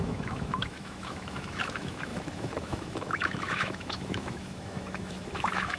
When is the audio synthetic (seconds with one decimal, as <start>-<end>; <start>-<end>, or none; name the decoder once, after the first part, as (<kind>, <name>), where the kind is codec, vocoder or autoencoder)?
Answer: 0.0-5.8 (autoencoder, DAC-VAE)